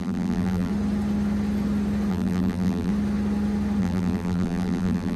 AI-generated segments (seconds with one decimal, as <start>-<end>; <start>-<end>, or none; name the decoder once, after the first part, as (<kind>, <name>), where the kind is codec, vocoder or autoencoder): 0.0-0.7 (vocoder, BigVGAN v2); 2.1-2.9; 3.8-5.2